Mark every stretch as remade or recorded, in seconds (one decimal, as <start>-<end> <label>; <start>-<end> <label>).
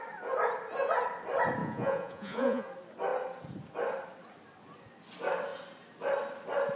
0.0-1.6 recorded; 1.6-2.7 remade; 2.7-6.8 recorded